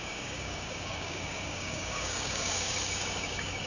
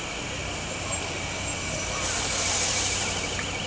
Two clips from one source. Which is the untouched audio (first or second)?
second